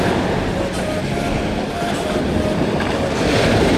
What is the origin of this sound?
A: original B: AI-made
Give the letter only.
A